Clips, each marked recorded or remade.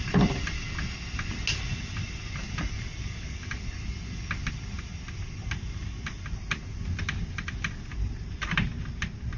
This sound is recorded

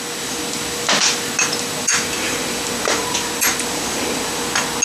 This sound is recorded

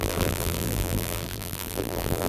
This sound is remade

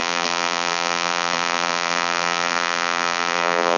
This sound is remade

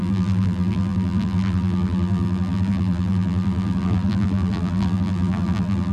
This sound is remade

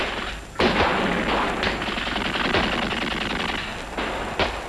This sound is recorded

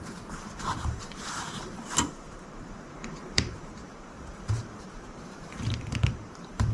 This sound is remade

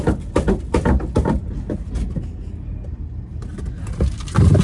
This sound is recorded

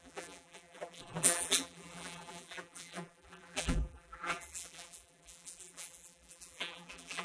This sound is remade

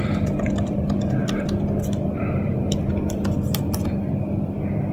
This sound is recorded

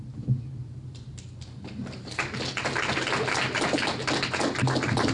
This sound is recorded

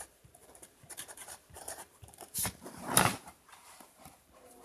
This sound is remade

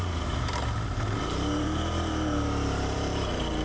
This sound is remade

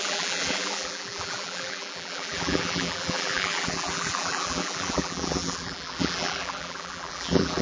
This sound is remade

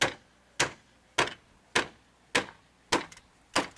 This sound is recorded